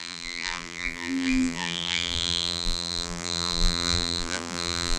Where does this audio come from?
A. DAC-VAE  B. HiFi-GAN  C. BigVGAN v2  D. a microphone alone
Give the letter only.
C